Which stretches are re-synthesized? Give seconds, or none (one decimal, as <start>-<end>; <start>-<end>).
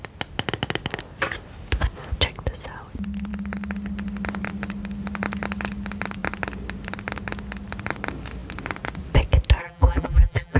9.6-10.6